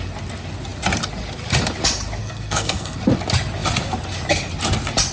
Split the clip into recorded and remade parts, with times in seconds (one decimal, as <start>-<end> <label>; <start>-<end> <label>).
0.0-2.2 recorded; 2.2-3.0 remade; 3.0-5.1 recorded